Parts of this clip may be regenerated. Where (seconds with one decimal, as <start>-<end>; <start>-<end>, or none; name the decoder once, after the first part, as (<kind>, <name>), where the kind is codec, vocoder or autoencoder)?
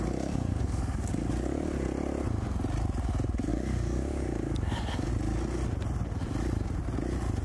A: 0.5-1.3 (codec, DAC); 3.5-5.1